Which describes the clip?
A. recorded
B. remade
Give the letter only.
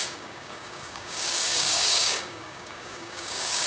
B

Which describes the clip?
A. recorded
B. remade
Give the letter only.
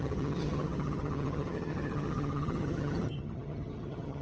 B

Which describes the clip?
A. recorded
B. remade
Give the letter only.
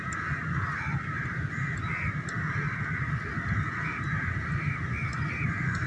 A